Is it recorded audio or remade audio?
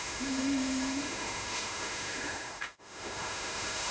remade